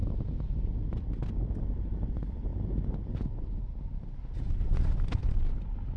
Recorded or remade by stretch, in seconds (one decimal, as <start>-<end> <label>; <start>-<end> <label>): 0.0-6.0 recorded